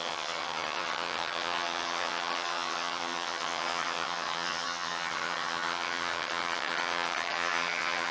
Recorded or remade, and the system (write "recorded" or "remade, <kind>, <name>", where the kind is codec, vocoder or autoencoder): remade, vocoder, HiFi-GAN